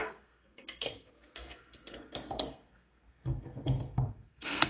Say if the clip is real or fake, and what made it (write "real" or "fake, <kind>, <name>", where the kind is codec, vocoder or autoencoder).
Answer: fake, codec, SNAC